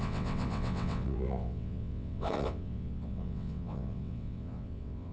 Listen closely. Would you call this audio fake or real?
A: fake